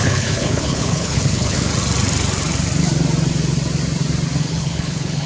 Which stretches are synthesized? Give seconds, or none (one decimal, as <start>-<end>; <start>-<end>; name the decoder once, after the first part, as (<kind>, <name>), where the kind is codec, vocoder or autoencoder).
0.0-1.7 (codec, HILCodec); 4.4-5.3